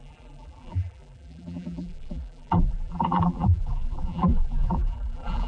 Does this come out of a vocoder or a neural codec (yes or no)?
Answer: yes